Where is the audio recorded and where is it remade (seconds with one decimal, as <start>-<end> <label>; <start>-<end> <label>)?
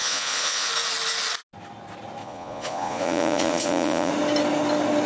0.0-0.7 remade; 0.7-2.2 recorded; 2.2-4.1 remade; 4.1-5.1 recorded